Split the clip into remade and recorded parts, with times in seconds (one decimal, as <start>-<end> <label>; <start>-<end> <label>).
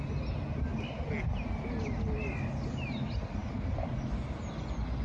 0.0-5.0 recorded